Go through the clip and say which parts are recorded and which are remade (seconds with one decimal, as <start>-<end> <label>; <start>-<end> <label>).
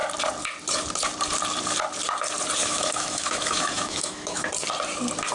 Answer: 0.0-2.6 recorded; 2.6-4.5 remade; 4.5-5.3 recorded